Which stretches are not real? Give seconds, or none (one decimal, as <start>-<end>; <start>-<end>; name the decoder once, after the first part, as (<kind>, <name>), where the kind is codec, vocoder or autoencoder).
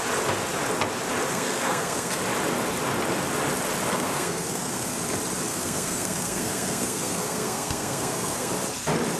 1.3-2.2 (codec, SNAC); 3.9-5.0; 5.5-8.5